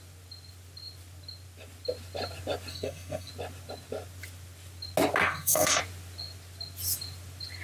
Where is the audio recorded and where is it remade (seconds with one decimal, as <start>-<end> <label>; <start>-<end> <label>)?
0.0-2.7 recorded; 2.7-3.3 remade; 3.3-5.2 recorded; 5.2-5.8 remade; 5.8-7.6 recorded